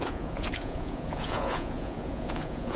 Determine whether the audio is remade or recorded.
remade